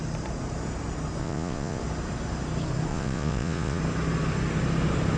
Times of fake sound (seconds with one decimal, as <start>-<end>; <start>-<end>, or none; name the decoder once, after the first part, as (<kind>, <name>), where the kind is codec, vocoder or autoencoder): 1.2-1.8 (vocoder, Vocos); 2.9-3.8

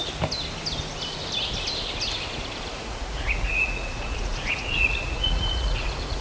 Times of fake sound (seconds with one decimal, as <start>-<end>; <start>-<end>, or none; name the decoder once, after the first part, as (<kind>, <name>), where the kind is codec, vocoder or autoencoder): 2.7-6.2 (vocoder, Vocos)

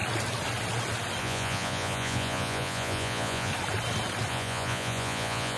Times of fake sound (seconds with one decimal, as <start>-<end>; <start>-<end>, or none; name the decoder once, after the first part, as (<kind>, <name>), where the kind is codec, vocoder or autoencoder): 1.2-3.5 (vocoder, Vocos); 4.3-5.6